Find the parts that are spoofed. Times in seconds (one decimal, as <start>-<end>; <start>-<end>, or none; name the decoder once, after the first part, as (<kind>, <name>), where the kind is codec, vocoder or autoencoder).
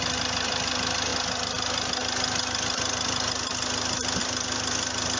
none